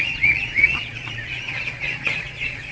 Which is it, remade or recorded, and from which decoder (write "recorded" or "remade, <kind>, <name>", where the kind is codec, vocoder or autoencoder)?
remade, vocoder, Vocos